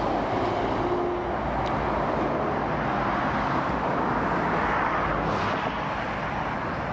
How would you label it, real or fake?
real